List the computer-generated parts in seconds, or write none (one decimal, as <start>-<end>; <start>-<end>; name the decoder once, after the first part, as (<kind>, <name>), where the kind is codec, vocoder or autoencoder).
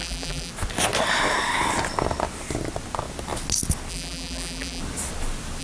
0.0-0.5 (vocoder, BigVGAN v2); 3.9-4.8